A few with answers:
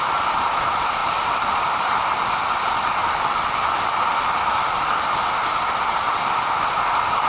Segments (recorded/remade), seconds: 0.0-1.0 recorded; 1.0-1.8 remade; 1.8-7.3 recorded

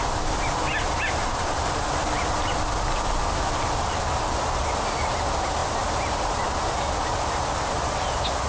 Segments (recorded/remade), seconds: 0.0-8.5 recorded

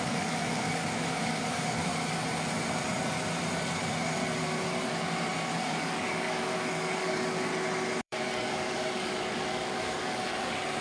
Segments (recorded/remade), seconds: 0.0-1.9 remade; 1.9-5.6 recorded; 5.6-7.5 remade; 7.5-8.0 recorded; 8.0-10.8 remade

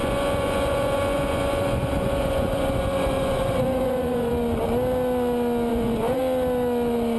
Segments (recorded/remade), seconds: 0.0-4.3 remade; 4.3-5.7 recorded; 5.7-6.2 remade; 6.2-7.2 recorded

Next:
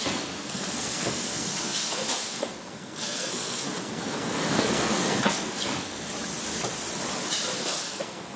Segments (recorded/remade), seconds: 0.0-6.1 remade; 6.1-7.6 recorded; 7.6-8.4 remade

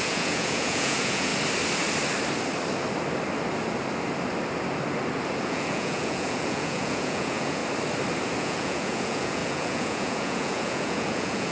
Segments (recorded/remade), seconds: 0.0-1.3 remade; 1.3-5.4 recorded; 5.4-7.6 remade; 7.6-8.4 recorded; 8.4-11.5 remade

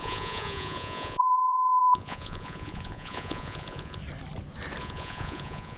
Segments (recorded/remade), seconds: 0.0-4.0 remade; 4.0-4.8 recorded; 4.8-5.8 remade